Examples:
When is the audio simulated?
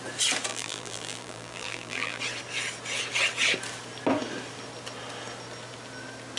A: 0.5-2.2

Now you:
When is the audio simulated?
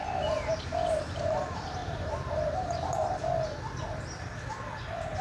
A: 1.8-2.3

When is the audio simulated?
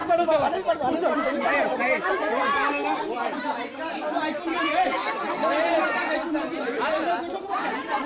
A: 0.7-8.1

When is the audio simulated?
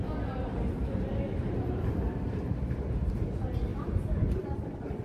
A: 0.5-3.3